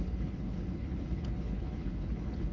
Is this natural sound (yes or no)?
no